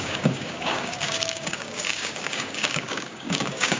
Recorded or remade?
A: remade